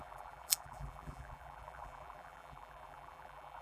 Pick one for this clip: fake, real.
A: fake